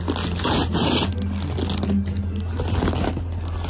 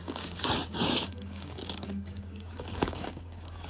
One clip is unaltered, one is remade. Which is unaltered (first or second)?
first